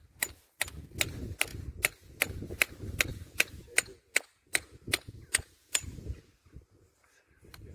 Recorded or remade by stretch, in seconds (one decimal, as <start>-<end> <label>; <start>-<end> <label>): 0.0-3.1 recorded; 3.1-6.0 remade; 6.0-7.7 recorded